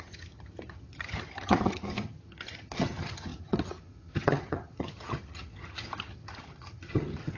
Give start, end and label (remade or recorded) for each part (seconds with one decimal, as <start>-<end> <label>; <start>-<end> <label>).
0.0-7.4 remade